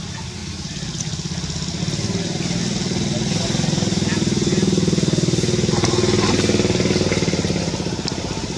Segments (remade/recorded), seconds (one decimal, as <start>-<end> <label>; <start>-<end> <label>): 0.0-8.6 recorded